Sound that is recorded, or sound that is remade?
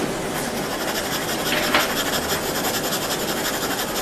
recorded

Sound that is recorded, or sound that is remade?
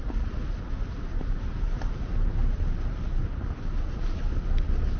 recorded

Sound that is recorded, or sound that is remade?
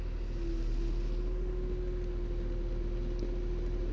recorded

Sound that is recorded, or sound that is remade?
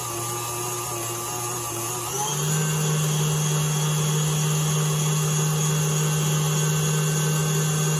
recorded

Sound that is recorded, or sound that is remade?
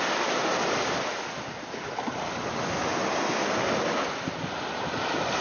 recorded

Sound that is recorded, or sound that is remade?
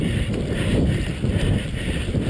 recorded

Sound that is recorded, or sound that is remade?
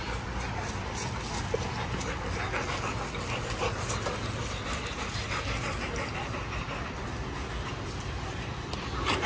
recorded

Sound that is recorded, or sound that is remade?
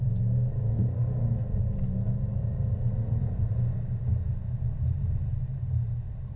recorded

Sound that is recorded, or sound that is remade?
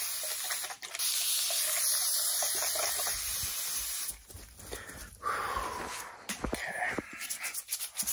recorded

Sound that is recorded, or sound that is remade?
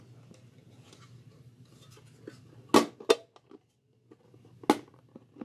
recorded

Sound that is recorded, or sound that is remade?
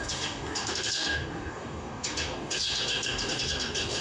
remade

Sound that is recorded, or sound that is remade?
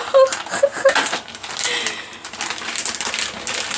recorded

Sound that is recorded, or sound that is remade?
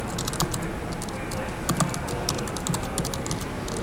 recorded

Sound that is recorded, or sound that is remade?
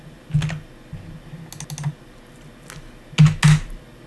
recorded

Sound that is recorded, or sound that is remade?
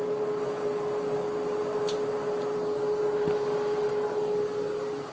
recorded